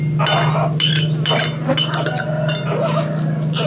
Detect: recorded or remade recorded